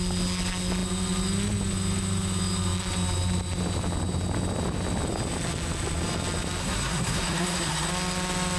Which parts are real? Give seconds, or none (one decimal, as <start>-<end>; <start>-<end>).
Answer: 0.0-6.6; 7.9-8.6